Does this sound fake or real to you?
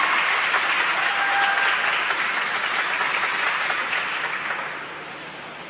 real